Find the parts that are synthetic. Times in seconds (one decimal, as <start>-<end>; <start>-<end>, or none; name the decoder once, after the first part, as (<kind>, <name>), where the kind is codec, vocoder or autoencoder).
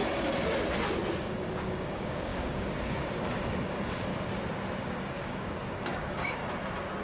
1.2-4.1 (codec, DAC); 4.8-6.4